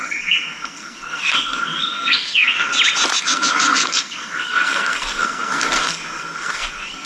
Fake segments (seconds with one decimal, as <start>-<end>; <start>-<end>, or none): 0.0-2.7; 3.2-7.1